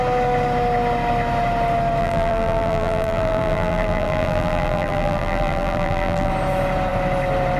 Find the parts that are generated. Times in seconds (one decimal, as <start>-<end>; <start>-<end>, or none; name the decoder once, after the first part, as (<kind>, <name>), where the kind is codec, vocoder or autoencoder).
2.0-6.3 (vocoder, BigVGAN v2)